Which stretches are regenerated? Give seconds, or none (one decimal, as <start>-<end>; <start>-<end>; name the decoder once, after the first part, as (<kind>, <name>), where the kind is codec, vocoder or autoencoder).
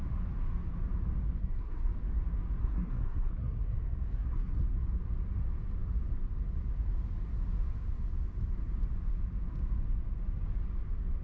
1.4-1.9 (codec, SNAC); 2.6-4.5